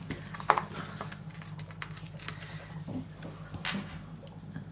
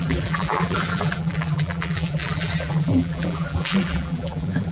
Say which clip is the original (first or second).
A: first